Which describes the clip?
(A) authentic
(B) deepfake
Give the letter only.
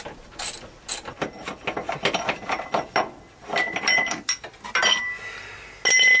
A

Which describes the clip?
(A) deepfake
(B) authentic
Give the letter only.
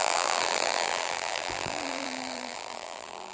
A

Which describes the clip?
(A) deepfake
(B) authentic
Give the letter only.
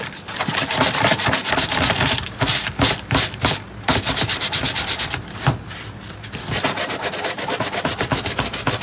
A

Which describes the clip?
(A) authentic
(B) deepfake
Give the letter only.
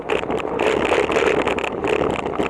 A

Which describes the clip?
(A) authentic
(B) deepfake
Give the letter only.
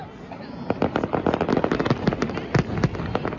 A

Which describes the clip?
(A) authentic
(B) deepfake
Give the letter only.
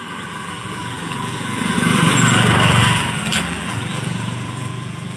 B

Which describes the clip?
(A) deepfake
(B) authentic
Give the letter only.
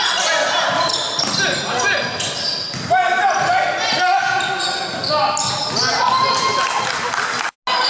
B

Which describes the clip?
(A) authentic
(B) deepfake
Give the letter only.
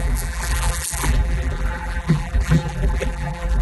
B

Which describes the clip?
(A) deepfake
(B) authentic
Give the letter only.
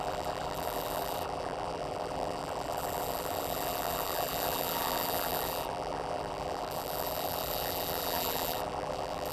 A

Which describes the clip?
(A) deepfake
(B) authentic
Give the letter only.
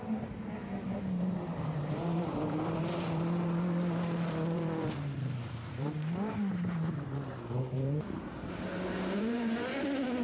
A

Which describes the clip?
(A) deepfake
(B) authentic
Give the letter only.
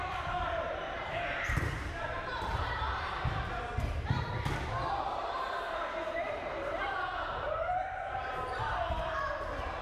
A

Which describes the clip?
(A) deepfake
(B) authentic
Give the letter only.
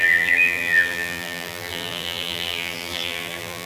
A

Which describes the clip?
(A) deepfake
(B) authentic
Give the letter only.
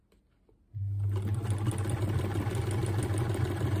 B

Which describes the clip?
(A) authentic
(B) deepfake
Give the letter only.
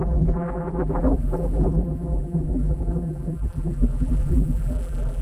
B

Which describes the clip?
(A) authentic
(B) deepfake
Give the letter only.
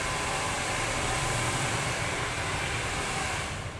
B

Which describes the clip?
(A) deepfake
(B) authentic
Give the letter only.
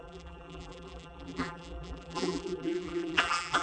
A